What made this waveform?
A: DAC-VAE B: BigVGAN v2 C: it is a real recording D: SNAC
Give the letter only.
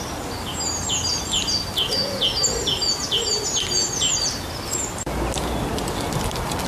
C